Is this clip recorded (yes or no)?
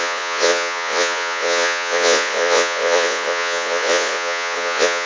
no